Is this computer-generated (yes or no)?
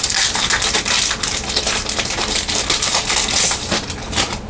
no